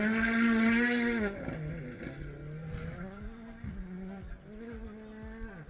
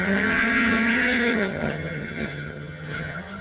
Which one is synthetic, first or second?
second